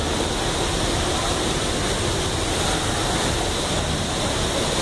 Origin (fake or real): real